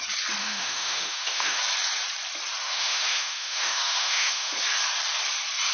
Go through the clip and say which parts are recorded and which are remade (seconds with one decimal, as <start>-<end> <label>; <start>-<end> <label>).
0.0-0.4 recorded; 0.4-1.6 remade; 1.6-2.6 recorded; 2.6-4.5 remade; 4.5-5.7 recorded